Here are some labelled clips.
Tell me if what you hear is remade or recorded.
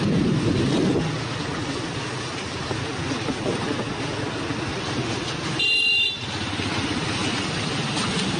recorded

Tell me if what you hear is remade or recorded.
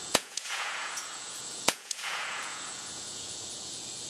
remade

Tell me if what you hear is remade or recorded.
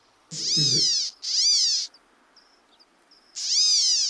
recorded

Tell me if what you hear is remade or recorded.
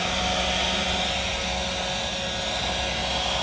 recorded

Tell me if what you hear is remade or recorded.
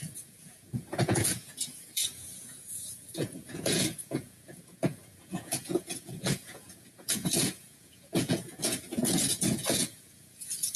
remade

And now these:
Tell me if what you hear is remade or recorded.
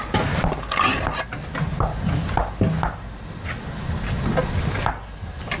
recorded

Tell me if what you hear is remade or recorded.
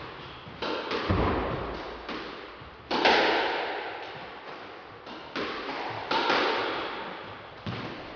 recorded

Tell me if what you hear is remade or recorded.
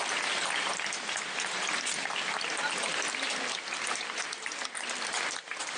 recorded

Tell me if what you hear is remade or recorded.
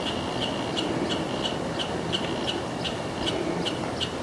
recorded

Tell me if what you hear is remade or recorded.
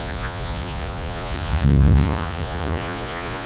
remade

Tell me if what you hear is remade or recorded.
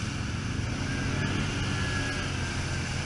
recorded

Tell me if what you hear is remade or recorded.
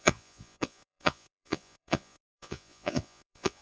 remade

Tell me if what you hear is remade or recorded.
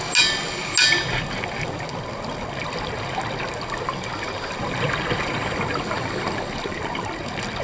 recorded